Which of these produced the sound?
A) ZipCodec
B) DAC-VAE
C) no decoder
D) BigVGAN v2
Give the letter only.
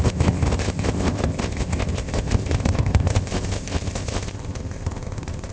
A